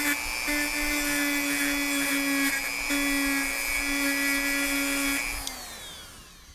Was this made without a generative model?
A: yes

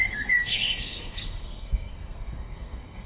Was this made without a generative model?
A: no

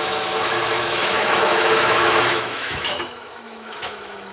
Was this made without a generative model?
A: no